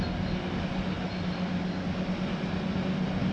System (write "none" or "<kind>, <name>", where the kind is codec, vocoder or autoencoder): none